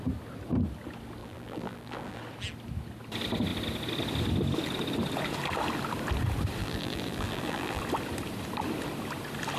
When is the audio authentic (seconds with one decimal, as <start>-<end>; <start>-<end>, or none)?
0.0-1.2; 2.2-6.6; 7.8-9.6